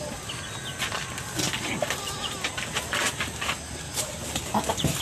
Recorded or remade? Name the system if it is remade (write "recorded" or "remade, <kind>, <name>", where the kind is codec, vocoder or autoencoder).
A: recorded